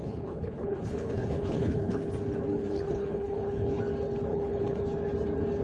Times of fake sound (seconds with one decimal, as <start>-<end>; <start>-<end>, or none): 0.0-2.1; 2.5-3.8; 4.3-4.8